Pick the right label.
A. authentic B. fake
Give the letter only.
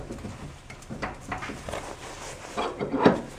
A